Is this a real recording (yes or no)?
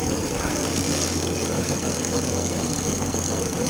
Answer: no